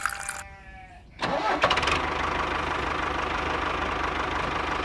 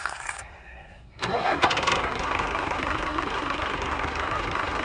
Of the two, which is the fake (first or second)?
second